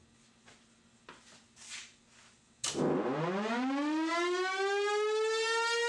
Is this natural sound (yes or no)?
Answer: yes